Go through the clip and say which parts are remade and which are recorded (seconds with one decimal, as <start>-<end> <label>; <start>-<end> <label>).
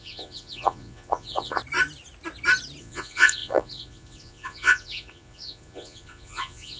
0.0-1.6 remade; 1.6-2.8 recorded; 2.8-6.8 remade